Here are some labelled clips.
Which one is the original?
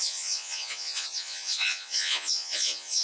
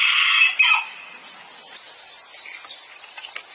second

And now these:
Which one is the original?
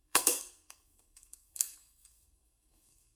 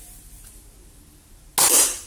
second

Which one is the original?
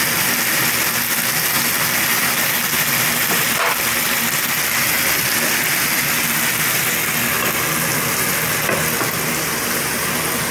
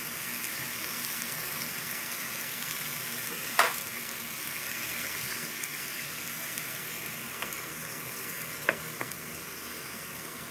first